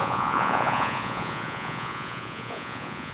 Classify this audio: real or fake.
fake